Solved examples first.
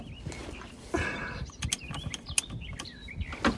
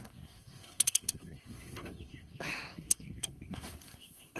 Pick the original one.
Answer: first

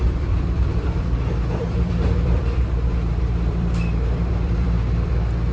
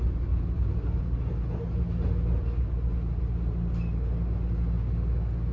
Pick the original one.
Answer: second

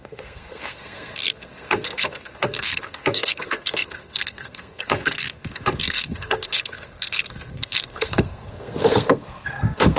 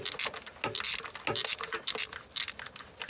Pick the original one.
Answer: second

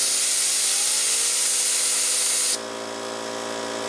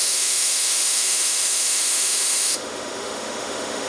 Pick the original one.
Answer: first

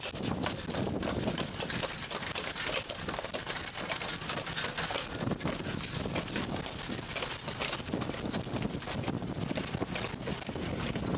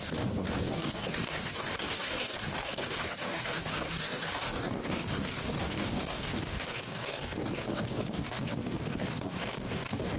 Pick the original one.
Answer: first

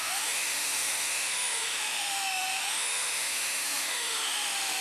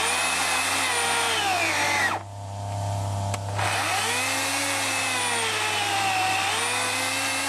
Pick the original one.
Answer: second